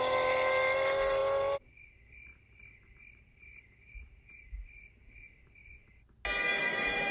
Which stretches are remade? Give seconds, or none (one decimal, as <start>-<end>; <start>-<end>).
0.0-1.2; 2.0-5.6; 6.6-7.1